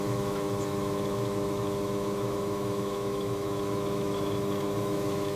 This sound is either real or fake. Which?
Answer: fake